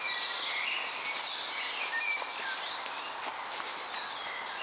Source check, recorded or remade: recorded